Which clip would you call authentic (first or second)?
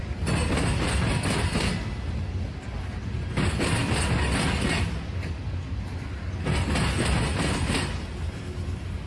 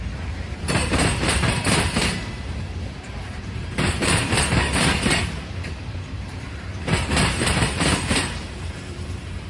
first